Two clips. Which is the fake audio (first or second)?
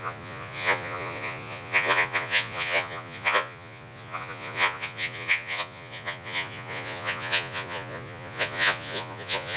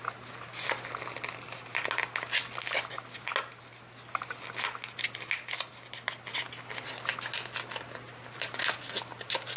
first